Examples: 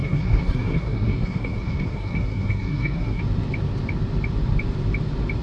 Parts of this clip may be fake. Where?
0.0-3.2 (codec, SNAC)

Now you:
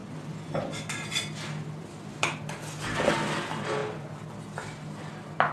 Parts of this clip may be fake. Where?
none

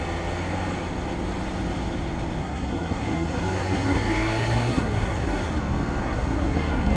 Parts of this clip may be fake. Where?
2.4-5.4 (codec, SNAC); 6.0-7.0

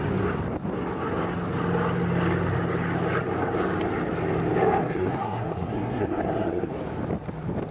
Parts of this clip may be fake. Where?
4.8-6.7 (codec, SNAC)

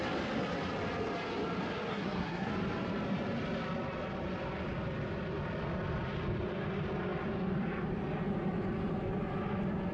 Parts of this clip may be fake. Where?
1.9-2.5 (codec, SNAC)

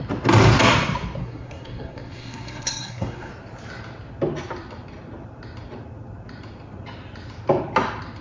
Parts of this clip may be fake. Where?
1.2-3.3 (codec, SNAC)